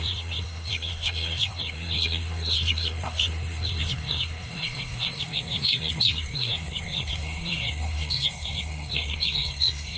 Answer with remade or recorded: remade